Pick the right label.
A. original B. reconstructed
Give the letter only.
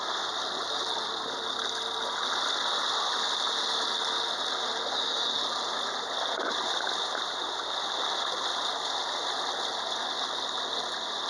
A